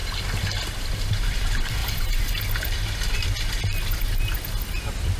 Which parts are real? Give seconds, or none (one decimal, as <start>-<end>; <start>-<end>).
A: 0.0-1.8; 2.4-5.2